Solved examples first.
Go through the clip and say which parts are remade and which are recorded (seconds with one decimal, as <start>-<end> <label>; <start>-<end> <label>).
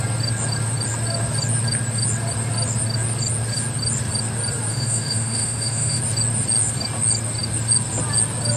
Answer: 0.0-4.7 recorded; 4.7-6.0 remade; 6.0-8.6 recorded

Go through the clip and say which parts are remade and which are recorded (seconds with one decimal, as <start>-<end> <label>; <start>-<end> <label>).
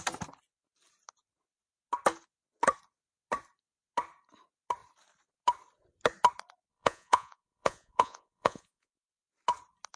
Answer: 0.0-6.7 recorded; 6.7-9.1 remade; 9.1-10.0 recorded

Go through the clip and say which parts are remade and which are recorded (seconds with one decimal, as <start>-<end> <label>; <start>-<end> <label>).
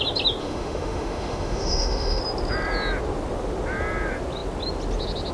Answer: 0.0-0.4 recorded; 0.4-2.2 remade; 2.2-5.3 recorded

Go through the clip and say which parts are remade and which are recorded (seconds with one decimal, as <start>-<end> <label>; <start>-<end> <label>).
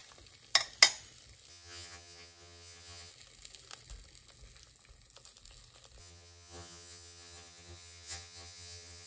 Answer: 0.0-1.5 recorded; 1.5-3.1 remade; 3.1-6.0 recorded; 6.0-9.1 remade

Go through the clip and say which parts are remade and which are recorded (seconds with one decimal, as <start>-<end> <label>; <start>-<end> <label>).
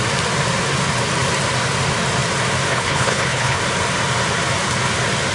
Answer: 0.0-2.7 recorded; 2.7-3.6 remade; 3.6-5.3 recorded